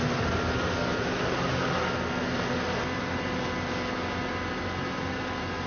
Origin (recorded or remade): recorded